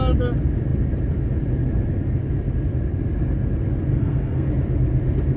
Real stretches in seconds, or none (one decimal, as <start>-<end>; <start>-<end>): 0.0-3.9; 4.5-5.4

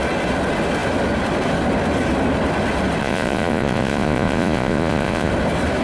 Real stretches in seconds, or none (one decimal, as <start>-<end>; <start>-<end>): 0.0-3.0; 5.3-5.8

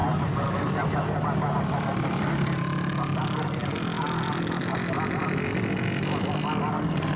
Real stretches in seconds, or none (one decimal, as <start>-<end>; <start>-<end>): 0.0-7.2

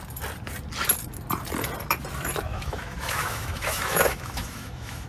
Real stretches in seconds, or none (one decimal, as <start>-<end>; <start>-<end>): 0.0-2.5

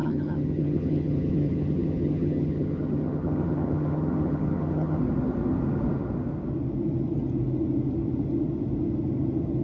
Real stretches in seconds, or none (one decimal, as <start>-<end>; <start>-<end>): 5.0-9.6

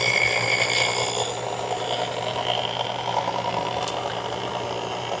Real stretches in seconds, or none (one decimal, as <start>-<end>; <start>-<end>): 0.0-5.2